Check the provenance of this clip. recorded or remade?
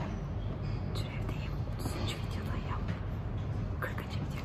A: recorded